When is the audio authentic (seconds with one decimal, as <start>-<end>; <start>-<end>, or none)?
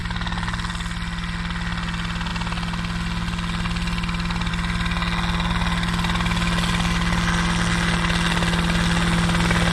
0.0-9.7